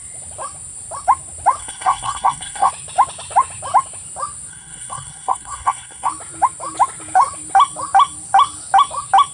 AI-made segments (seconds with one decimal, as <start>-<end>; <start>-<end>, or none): 1.6-2.7; 4.5-6.1